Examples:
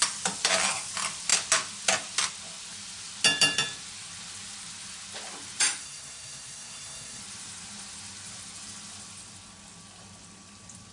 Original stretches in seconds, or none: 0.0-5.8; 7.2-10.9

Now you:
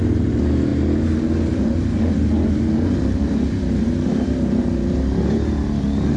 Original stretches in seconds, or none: 0.0-6.2

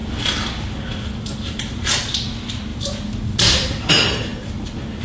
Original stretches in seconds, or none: 0.0-5.0

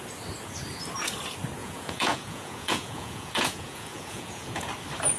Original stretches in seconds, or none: 0.0-1.6; 4.7-5.2

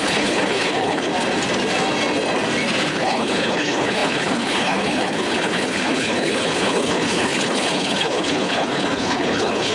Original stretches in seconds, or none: 1.1-2.9